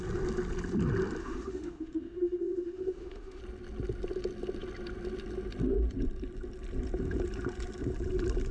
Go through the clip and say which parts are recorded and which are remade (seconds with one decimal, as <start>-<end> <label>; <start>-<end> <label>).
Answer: 0.0-1.2 recorded; 1.2-3.4 remade; 3.4-8.5 recorded